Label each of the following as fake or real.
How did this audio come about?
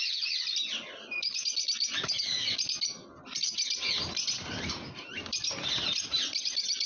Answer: real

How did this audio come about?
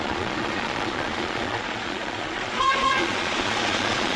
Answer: fake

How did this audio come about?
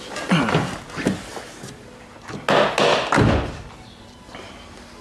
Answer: real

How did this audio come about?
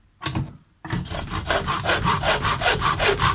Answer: real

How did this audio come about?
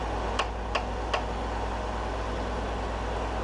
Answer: real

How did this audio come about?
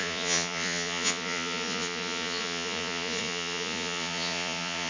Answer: fake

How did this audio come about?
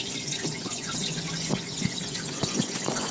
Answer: fake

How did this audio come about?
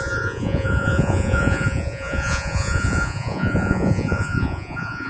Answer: fake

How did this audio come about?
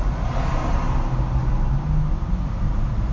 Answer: real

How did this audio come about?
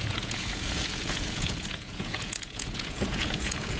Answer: fake